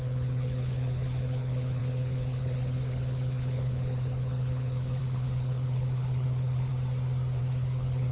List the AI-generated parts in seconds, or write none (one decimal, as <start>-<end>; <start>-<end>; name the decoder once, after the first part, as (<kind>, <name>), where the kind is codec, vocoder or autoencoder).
0.0-6.7 (codec, HILCodec); 7.4-8.1